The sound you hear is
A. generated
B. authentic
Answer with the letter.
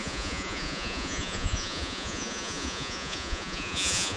A